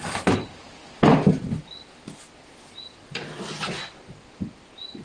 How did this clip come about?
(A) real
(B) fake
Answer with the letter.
A